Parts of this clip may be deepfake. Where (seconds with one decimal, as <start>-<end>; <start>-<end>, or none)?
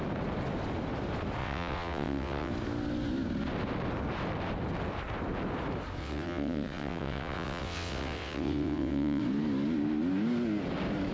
1.4-2.5; 6.0-9.2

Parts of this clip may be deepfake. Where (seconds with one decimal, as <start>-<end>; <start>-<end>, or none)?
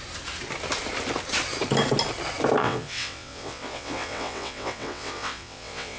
2.6-6.0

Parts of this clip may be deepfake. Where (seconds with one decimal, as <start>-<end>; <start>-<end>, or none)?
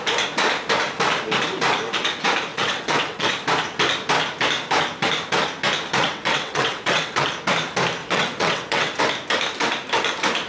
2.5-3.3; 6.0-7.3; 8.0-9.0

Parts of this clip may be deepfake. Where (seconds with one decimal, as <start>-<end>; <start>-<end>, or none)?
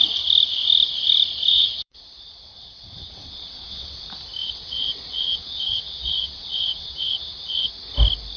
1.5-4.0; 4.4-7.7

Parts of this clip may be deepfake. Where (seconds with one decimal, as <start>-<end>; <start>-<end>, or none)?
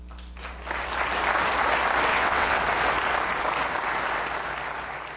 2.1-2.6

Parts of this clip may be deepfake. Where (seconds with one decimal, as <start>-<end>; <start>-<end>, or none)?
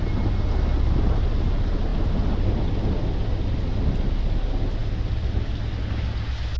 none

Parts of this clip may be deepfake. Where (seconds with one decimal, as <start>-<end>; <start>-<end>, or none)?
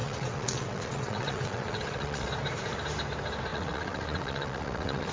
0.0-2.3; 3.5-5.1